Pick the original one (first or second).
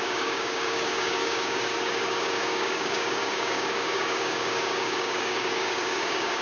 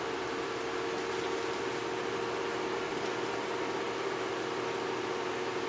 second